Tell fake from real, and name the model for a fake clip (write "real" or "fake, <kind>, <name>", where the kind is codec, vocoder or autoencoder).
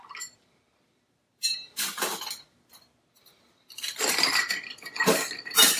fake, vocoder, BigVGAN v2